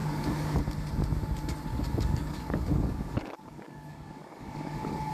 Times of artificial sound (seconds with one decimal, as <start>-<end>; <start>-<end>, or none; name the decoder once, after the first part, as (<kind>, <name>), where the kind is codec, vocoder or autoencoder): 0.0-0.6 (codec, DAC); 1.7-5.1